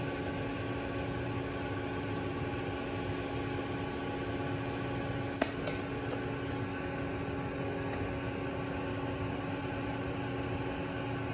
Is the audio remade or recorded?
recorded